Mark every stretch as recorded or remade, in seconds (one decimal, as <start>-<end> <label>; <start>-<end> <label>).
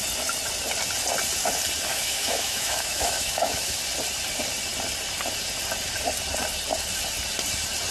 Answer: 0.0-1.9 recorded; 1.9-3.8 remade; 3.8-7.9 recorded